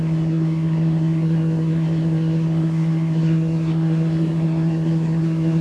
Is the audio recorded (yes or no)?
no